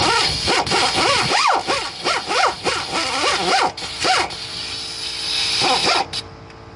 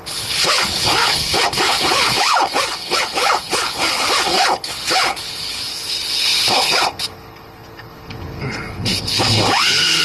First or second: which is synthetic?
second